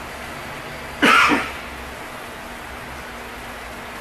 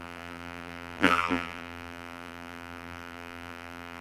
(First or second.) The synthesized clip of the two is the second